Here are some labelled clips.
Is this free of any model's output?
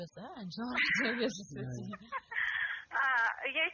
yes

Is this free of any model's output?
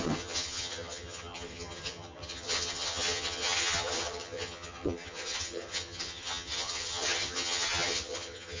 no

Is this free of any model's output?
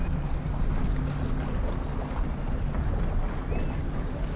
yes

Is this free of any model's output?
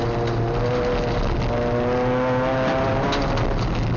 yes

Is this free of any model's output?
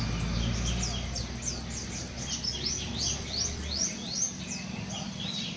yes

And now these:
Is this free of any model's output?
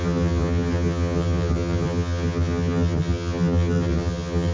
no